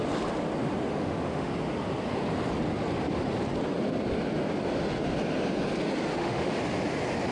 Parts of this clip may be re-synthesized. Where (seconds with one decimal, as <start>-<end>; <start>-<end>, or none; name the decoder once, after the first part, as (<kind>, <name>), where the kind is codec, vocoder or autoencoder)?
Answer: 0.9-1.5 (autoencoder, DAC-VAE); 6.1-6.6